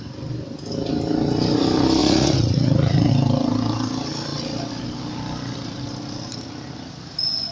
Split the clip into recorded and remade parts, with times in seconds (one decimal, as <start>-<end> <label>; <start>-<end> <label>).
0.0-2.0 recorded; 2.0-3.1 remade; 3.1-7.5 recorded